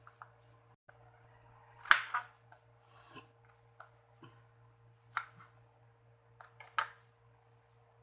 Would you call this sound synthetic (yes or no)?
no